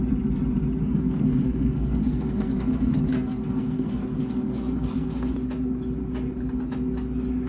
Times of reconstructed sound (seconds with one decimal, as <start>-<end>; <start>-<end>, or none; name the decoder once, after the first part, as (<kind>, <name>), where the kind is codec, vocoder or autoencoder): 0.8-5.3 (codec, SNAC)